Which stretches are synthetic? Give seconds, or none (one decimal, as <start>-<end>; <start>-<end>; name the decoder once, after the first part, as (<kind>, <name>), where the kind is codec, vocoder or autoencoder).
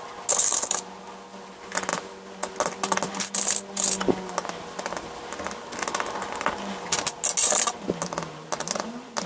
none